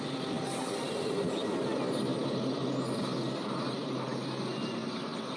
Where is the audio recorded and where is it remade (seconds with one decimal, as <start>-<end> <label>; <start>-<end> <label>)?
0.0-5.4 recorded

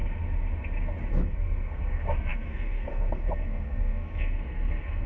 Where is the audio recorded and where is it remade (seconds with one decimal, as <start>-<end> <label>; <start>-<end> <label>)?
0.0-1.1 recorded; 1.1-5.1 remade

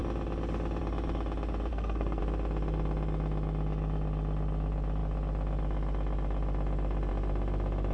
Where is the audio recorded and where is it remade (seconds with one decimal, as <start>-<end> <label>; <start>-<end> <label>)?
0.0-1.7 recorded; 1.7-2.2 remade; 2.2-7.9 recorded

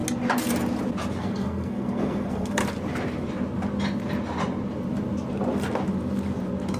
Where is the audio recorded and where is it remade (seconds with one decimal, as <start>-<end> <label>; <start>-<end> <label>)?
0.0-1.2 recorded; 1.2-2.6 remade; 2.6-6.8 recorded

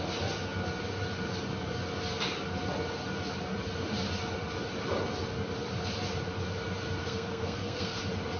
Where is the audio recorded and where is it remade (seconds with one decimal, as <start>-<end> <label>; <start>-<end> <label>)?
0.0-7.0 recorded; 7.0-8.0 remade; 8.0-8.4 recorded